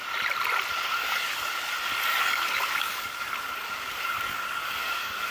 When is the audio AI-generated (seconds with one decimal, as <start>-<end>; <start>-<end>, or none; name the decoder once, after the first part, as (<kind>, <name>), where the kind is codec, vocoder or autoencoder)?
1.0-1.7 (codec, DAC); 2.1-5.3